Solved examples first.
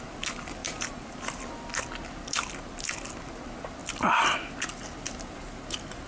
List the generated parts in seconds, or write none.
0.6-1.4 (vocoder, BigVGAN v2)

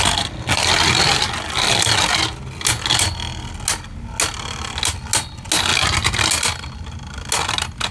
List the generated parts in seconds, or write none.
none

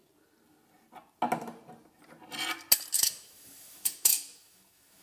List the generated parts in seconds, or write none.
3.0-5.0 (autoencoder, DAC-VAE)

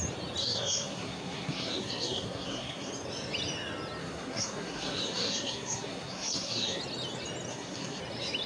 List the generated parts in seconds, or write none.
0.4-2.9 (codec, SNAC); 4.0-6.8; 7.5-8.0